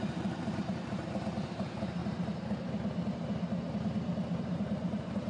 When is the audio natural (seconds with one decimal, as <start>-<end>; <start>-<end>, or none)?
2.0-4.4